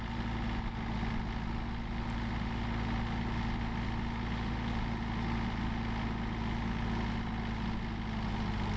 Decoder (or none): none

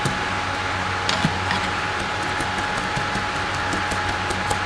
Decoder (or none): none